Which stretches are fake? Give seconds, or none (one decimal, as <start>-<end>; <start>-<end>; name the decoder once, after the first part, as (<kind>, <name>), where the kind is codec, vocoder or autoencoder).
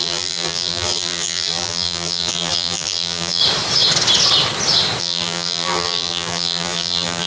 0.0-3.4 (vocoder, BigVGAN v2); 5.0-7.3